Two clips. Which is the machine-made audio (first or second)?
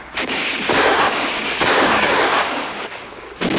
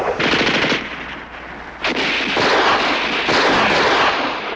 first